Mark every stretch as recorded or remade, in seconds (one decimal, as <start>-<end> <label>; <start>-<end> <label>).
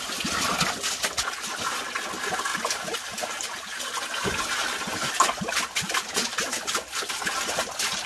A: 0.0-8.1 recorded